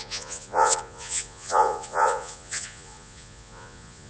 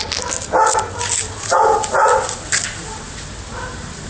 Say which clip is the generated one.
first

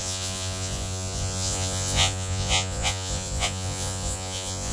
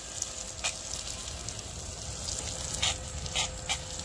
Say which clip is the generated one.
first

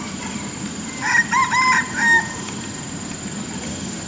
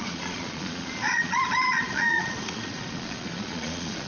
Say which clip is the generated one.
second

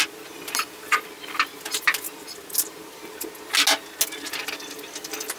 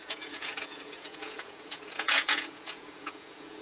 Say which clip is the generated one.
second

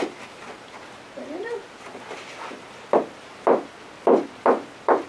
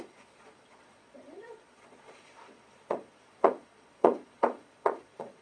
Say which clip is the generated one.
second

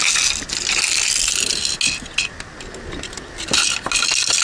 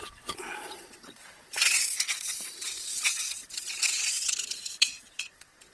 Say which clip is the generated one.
second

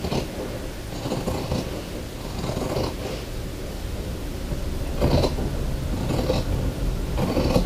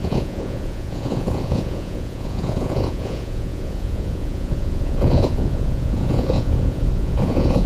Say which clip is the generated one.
second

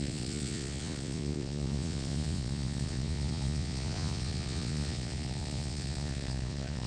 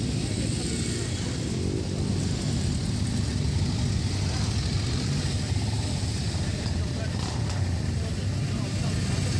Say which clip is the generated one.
first